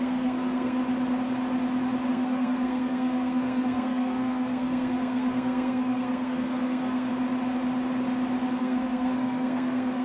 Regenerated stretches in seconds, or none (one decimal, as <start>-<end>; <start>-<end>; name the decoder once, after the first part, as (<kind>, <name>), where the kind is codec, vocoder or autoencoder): 0.0-0.8 (codec, SNAC); 2.1-7.1; 8.6-10.0